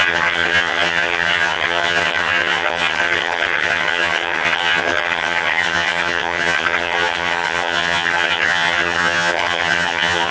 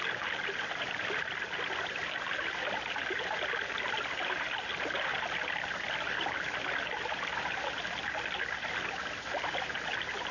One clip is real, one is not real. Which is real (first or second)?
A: second